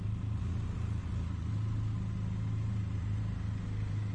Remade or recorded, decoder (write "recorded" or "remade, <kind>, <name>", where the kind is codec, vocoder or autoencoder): recorded